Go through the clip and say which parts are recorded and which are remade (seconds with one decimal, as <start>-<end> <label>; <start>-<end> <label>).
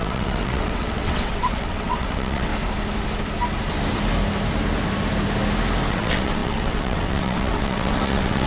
0.0-2.5 remade; 2.5-5.9 recorded; 5.9-8.5 remade